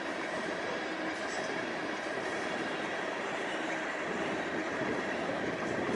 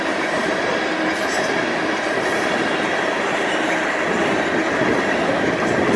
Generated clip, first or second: first